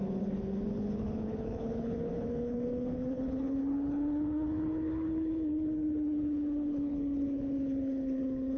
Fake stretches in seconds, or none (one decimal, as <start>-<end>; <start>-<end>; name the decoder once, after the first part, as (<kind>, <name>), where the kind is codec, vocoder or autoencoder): 0.0-8.6 (codec, HILCodec)